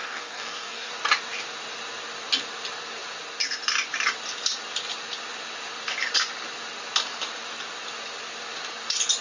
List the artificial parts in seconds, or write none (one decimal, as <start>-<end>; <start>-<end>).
0.0-0.9